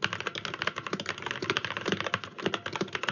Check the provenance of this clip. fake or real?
real